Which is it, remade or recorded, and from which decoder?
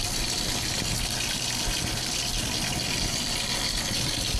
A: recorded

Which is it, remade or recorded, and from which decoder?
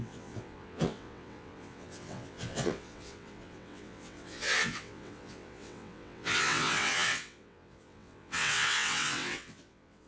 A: remade, vocoder, WaveNeXt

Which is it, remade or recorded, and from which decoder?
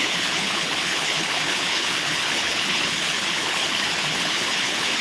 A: remade, codec, HILCodec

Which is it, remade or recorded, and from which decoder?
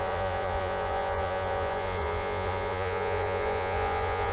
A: remade, vocoder, Vocos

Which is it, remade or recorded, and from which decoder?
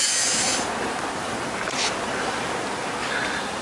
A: recorded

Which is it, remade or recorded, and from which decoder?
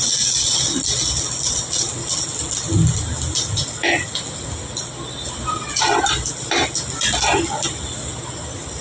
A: recorded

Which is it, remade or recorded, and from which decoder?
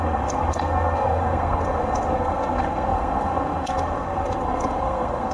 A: remade, codec, SNAC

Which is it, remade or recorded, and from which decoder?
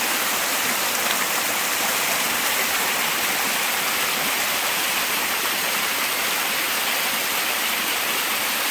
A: recorded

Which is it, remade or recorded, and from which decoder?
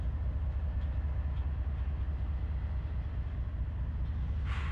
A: recorded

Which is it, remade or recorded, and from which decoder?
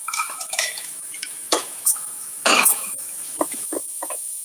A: remade, autoencoder, DAC-VAE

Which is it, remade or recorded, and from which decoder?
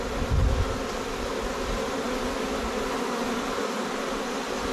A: recorded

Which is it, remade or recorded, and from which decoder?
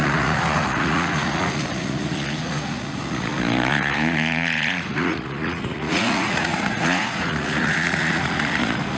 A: remade, vocoder, Vocos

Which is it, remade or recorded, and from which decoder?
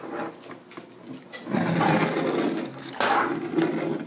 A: recorded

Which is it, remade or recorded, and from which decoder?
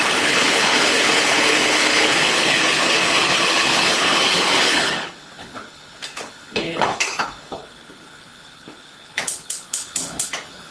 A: remade, codec, HILCodec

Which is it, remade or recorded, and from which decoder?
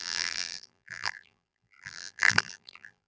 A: remade, vocoder, BigVGAN v2